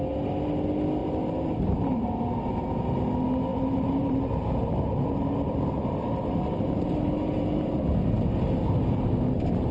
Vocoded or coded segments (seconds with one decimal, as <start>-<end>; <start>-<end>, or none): 1.0-2.2; 3.5-8.4